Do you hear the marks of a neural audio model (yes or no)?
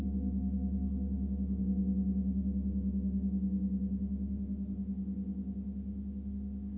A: no